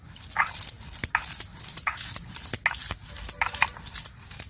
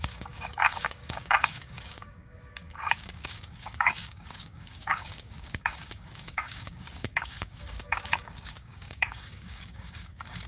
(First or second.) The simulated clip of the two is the second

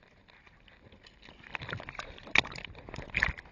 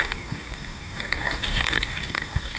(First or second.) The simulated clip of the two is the second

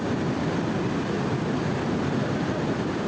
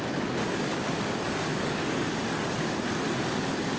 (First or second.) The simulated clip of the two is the second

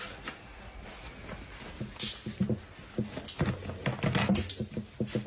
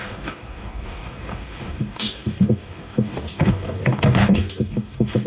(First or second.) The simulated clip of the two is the second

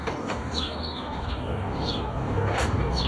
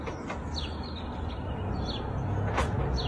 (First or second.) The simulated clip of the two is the first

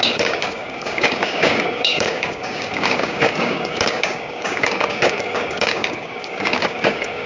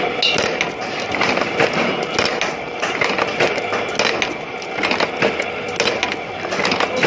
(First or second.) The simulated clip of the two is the first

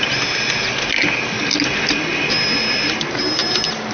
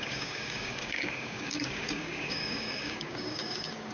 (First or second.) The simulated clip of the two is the second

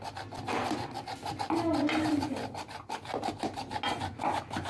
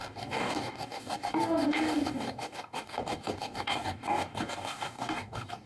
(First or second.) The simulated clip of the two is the second